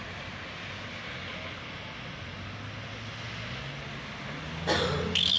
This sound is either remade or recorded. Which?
recorded